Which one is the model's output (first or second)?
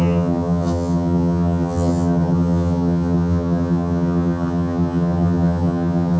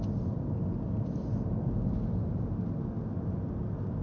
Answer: first